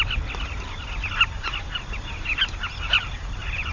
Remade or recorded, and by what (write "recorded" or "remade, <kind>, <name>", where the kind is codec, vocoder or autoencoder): recorded